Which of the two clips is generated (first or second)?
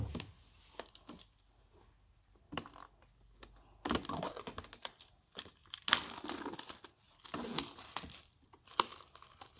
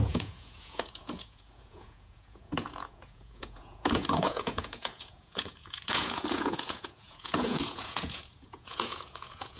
second